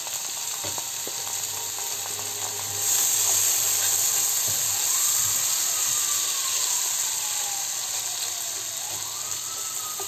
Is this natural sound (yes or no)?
yes